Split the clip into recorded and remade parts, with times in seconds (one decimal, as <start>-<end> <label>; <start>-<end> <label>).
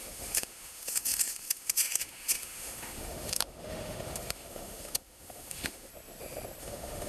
0.0-5.9 remade; 5.9-6.6 recorded; 6.6-7.1 remade